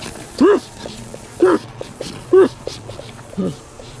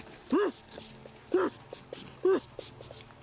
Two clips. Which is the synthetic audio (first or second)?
first